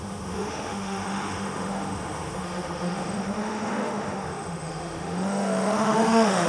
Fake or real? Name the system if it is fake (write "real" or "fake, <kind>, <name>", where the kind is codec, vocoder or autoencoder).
fake, autoencoder, DAC-VAE